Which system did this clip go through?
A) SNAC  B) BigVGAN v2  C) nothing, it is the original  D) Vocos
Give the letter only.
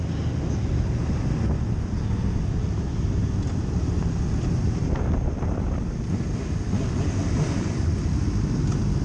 C